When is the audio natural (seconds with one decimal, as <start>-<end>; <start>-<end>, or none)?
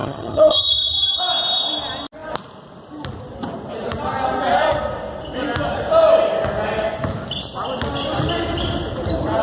1.2-9.4